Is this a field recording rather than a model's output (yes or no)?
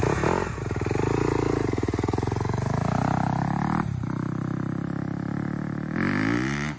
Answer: yes